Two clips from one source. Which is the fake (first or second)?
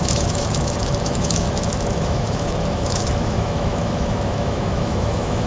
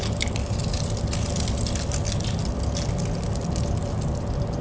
first